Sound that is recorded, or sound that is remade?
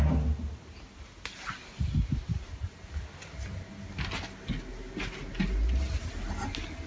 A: recorded